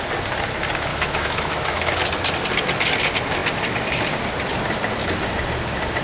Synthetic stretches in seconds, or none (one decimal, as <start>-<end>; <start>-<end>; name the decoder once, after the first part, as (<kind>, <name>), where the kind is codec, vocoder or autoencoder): 0.9-2.0 (autoencoder, DAC-VAE)